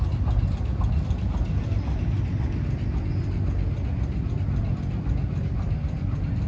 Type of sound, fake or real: real